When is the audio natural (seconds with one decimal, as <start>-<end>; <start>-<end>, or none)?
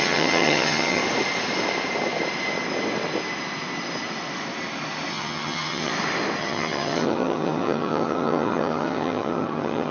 1.0-5.1; 5.9-6.4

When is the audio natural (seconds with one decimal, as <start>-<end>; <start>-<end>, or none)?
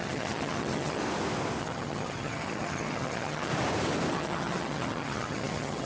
1.0-1.6; 3.5-4.1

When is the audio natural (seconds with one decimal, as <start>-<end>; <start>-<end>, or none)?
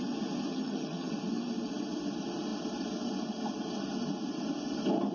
0.0-0.5; 1.1-5.1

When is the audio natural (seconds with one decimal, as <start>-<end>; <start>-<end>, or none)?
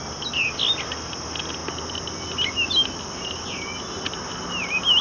0.0-5.0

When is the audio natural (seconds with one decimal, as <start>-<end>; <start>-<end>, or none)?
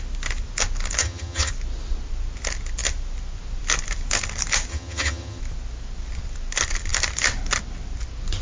0.0-1.0; 1.5-4.7; 5.4-8.4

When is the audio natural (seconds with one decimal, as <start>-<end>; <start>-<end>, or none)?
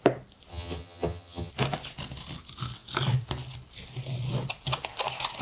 0.0-0.5; 1.5-5.4